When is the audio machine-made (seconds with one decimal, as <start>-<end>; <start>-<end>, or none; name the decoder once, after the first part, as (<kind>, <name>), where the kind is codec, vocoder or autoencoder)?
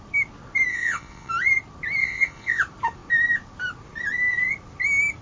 0.7-1.3 (vocoder, Vocos); 2.0-2.6